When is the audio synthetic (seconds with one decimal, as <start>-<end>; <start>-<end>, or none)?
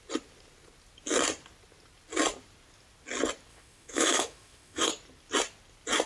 3.5-4.9